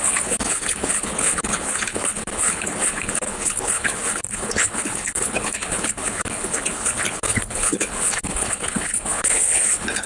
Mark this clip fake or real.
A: fake